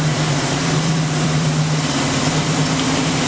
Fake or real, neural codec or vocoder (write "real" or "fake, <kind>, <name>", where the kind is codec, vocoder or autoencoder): fake, vocoder, BigVGAN v2